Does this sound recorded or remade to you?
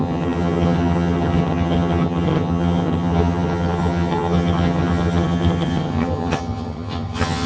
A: remade